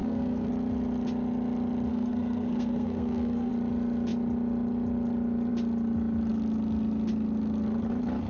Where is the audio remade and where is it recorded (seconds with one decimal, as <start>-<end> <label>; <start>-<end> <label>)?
0.0-0.5 remade; 0.5-1.9 recorded; 1.9-3.5 remade; 3.5-8.3 recorded